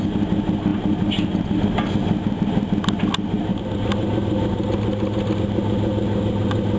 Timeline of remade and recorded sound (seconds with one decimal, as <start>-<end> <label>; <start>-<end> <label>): 0.0-6.8 recorded